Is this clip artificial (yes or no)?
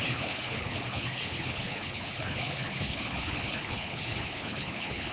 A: yes